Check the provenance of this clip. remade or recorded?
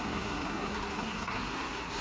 remade